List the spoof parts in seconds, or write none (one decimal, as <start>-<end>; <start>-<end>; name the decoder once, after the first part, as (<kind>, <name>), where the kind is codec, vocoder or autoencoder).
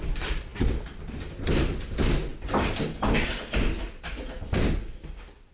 none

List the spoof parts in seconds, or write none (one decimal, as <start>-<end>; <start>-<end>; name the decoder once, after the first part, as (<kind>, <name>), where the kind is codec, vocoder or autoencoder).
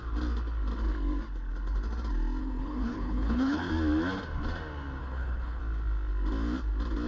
2.4-3.7 (codec, HILCodec); 5.0-5.6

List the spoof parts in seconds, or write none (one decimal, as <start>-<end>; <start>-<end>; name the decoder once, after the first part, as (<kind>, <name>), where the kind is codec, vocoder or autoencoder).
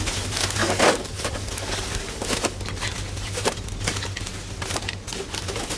0.6-2.2 (codec, DAC)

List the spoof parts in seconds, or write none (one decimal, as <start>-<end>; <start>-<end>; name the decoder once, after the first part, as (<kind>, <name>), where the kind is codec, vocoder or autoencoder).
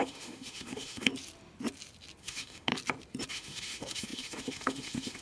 0.0-1.1 (autoencoder, DAC-VAE); 2.2-2.7; 3.3-5.2